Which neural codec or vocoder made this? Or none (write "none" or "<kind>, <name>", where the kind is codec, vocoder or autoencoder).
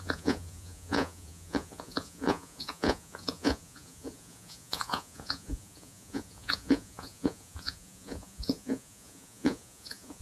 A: vocoder, Vocos